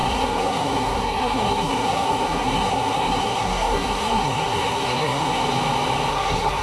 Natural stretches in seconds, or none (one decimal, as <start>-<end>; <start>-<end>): 5.4-6.1